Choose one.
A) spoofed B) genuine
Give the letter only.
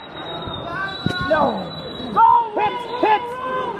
A